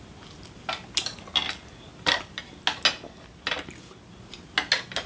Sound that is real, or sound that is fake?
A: real